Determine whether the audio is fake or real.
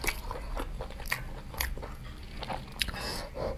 real